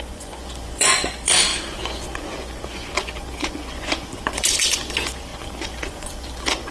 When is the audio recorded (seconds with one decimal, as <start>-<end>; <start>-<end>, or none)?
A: none